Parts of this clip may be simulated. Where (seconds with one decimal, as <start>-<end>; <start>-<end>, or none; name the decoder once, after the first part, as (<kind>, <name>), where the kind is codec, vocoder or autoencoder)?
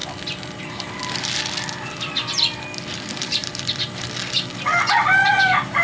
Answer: 2.9-3.5 (vocoder, BigVGAN v2)